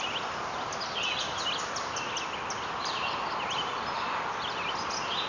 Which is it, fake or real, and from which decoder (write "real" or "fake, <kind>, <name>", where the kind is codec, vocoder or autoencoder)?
real